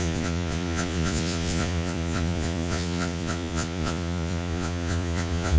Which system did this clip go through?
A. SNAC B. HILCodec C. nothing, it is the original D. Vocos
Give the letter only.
D